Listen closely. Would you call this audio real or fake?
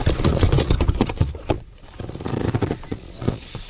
fake